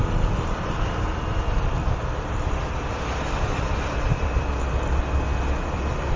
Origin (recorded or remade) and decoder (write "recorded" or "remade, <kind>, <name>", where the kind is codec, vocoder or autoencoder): recorded